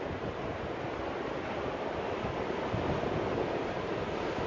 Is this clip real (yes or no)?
yes